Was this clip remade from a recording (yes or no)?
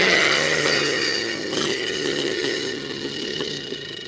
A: yes